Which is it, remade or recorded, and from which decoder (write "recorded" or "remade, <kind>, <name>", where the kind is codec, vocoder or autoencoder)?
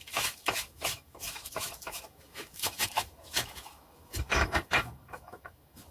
remade, autoencoder, DAC-VAE